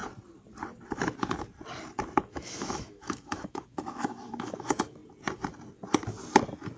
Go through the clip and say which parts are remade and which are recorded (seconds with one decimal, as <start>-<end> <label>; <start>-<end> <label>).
0.0-2.3 recorded; 2.3-5.0 remade; 5.0-6.8 recorded